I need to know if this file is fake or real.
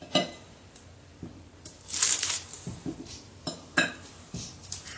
fake